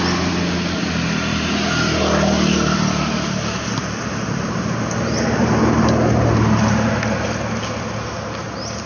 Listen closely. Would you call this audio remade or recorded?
recorded